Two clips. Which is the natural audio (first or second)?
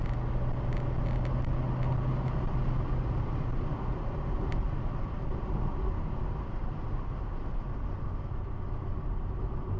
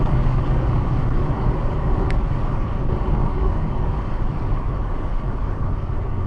first